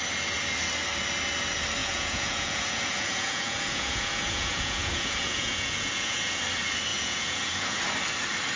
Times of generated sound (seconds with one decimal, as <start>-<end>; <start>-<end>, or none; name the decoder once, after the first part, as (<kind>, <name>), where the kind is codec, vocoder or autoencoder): 1.8-6.4 (vocoder, Vocos); 6.9-7.8